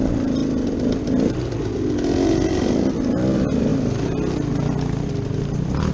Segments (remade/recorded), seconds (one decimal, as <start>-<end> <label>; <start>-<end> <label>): 0.0-5.9 recorded